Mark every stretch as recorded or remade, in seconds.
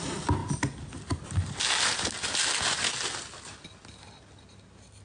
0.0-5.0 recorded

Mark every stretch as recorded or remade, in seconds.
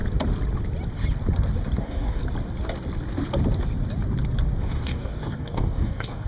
0.0-1.8 recorded; 1.8-2.2 remade; 2.2-4.6 recorded; 4.6-6.3 remade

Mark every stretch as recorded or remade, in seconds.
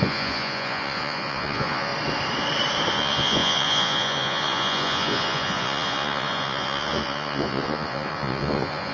0.0-1.9 remade; 1.9-2.9 recorded; 2.9-8.9 remade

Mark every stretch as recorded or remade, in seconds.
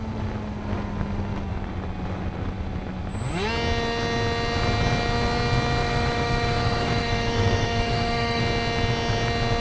0.0-5.8 recorded; 5.8-8.4 remade; 8.4-9.6 recorded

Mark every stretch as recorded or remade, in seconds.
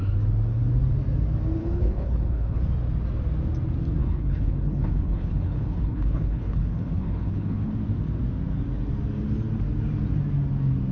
0.0-1.6 recorded; 1.6-2.6 remade; 2.6-4.0 recorded; 4.0-7.7 remade; 7.7-10.9 recorded